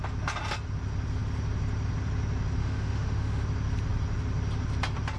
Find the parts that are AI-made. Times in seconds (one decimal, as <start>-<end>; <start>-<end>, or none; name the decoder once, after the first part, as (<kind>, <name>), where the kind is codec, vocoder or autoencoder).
2.6-3.4 (autoencoder, DAC-VAE)